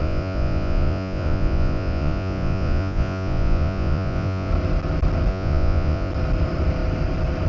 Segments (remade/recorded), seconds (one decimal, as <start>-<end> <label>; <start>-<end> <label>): 0.0-4.5 remade; 4.5-5.3 recorded; 5.3-6.1 remade; 6.1-7.5 recorded